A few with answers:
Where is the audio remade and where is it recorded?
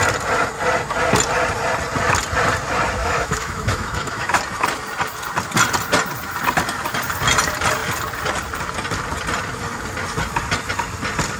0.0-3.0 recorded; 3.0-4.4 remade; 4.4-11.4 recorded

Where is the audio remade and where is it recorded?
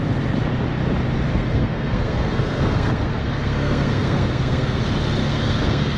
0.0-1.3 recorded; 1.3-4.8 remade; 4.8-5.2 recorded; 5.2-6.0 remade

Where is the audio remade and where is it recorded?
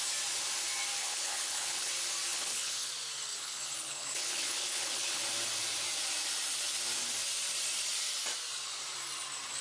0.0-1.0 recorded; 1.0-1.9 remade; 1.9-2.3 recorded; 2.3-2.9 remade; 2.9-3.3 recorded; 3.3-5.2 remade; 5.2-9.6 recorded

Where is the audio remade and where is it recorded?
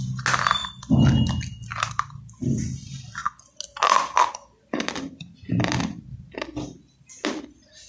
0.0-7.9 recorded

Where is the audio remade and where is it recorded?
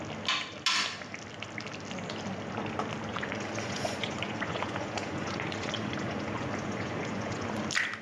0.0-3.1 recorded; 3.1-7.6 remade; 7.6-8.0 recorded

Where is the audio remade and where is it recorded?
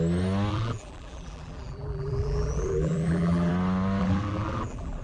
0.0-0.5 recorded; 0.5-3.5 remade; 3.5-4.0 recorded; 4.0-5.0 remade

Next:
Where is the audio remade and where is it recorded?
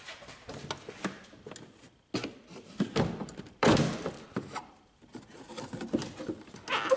0.0-2.2 recorded; 2.2-2.7 remade; 2.7-3.2 recorded; 3.2-3.8 remade; 3.8-7.0 recorded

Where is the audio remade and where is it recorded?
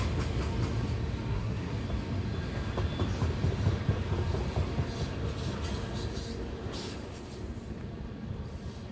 0.0-1.3 recorded; 1.3-1.8 remade; 1.8-8.9 recorded